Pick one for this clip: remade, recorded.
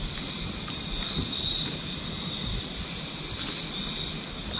recorded